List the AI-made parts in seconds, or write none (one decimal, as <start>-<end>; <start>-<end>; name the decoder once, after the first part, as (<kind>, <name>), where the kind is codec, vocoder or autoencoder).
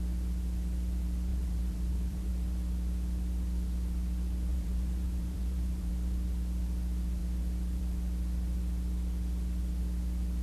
1.3-2.3 (vocoder, BigVGAN v2); 4.5-5.9